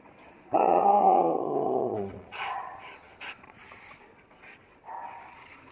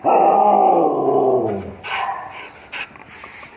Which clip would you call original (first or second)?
second